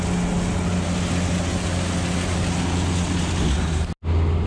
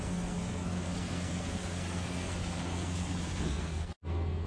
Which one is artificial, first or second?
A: second